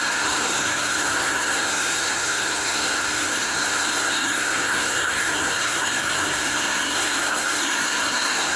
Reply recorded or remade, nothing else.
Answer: remade